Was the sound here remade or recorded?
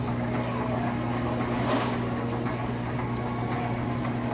recorded